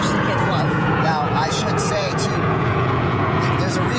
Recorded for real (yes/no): no